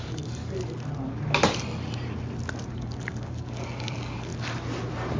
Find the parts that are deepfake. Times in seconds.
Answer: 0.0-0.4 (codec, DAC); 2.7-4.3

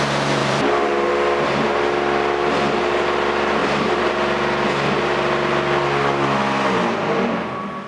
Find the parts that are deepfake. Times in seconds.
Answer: 0.4-1.1 (vocoder, BigVGAN v2); 3.6-4.1

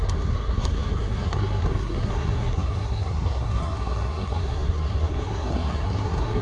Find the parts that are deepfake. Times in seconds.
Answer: 0.0-6.4 (codec, SNAC)

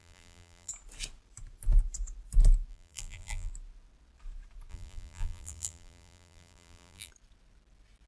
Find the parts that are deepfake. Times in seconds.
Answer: 0.0-0.7 (vocoder, BigVGAN v2); 2.7-3.5; 4.7-7.1

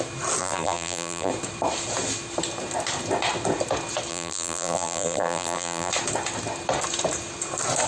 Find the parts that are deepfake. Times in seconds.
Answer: 0.4-1.3 (vocoder, BigVGAN v2); 4.1-5.9

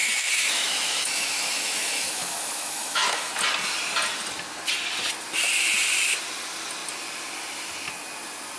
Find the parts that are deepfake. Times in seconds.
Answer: 0.0-3.3 (autoencoder, DAC-VAE)

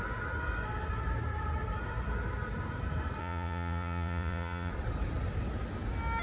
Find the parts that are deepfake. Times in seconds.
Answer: 3.2-4.7 (vocoder, Vocos)

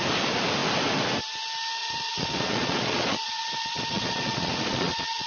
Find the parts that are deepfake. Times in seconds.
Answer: 1.8-5.3 (vocoder, Vocos)